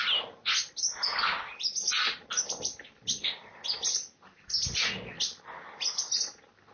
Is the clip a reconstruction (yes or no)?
no